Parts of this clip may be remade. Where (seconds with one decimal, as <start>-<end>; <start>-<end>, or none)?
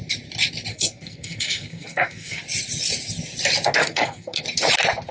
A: 0.7-2.4; 3.8-4.4